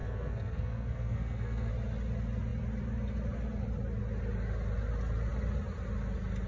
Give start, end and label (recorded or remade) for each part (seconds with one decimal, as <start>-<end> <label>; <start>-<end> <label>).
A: 0.0-1.7 remade; 1.7-6.5 recorded